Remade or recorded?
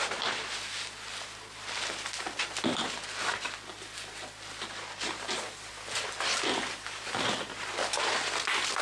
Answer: recorded